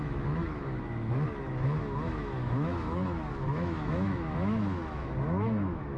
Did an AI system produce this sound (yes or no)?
yes